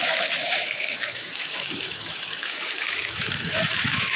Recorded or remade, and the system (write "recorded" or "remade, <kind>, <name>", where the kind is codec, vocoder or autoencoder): remade, autoencoder, DAC-VAE